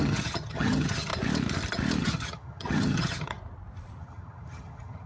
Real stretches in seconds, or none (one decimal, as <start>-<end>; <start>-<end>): 1.1-2.0; 3.4-4.0